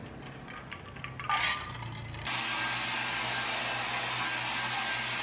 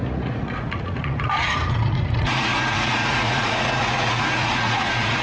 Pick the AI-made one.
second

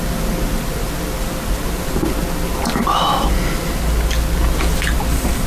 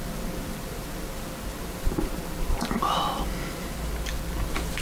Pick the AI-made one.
second